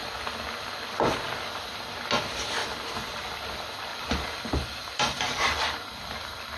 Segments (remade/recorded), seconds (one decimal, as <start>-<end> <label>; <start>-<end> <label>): 0.0-3.9 recorded; 3.9-6.6 remade